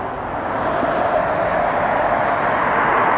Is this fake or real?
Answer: real